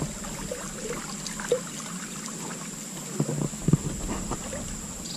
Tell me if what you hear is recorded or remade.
recorded